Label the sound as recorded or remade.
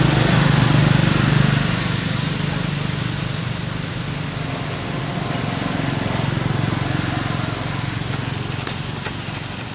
recorded